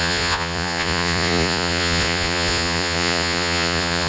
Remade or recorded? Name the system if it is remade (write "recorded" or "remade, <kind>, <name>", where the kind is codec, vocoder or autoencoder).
remade, vocoder, Vocos